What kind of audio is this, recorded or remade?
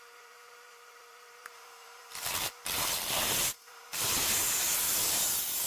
remade